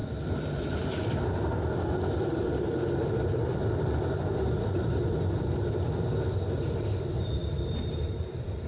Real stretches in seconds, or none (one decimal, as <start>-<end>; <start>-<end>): 0.0-0.6